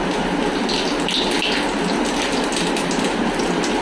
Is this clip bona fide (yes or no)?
yes